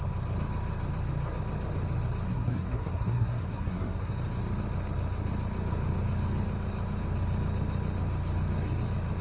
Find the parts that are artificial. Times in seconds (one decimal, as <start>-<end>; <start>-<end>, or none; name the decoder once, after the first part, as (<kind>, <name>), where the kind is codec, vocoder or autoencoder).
2.3-4.1 (codec, SNAC)